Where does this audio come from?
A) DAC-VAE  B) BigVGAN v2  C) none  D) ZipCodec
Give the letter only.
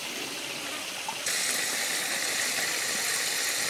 C